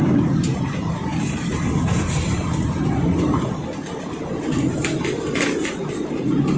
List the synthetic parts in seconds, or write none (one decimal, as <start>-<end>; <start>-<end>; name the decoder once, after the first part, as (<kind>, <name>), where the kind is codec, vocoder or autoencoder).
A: none